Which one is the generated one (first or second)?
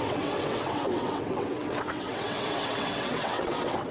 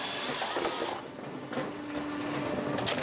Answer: first